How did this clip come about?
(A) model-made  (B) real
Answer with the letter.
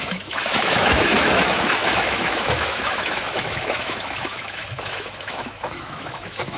A